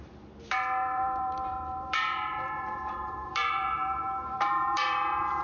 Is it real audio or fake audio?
fake